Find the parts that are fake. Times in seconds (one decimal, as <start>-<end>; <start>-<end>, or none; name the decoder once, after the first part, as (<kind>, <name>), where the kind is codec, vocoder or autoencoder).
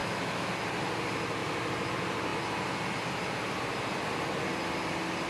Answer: 0.0-0.5 (autoencoder, DAC-VAE)